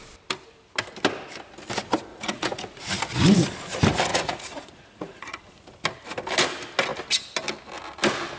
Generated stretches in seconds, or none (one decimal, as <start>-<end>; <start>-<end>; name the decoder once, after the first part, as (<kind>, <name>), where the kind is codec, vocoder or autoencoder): 2.1-2.9 (vocoder, Vocos); 4.1-5.4